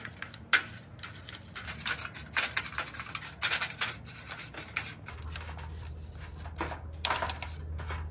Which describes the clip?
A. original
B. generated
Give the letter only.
A